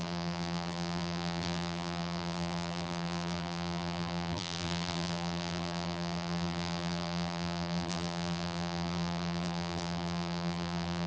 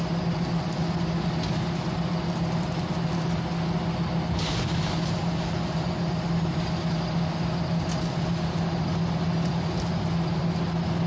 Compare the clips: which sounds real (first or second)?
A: second